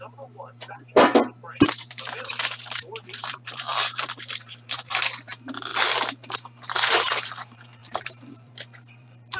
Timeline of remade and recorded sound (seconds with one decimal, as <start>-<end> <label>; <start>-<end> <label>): 0.0-5.7 remade; 5.7-6.3 recorded; 6.3-9.4 remade

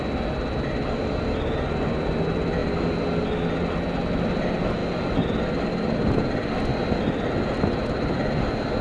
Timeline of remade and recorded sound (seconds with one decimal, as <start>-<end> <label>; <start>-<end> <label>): 0.0-8.8 recorded